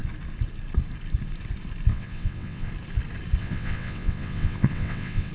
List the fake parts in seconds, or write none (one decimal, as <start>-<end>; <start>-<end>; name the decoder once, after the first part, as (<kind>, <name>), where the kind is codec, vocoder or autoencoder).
1.9-2.7 (vocoder, WaveNeXt); 3.4-5.3